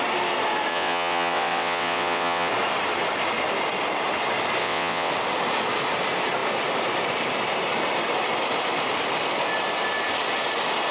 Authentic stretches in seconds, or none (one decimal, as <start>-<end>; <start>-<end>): 0.0-0.7; 2.5-4.6; 5.1-10.9